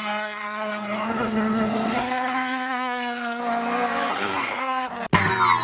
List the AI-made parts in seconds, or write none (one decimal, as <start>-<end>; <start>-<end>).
0.0-3.4; 4.1-4.9